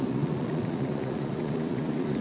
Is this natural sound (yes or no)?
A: no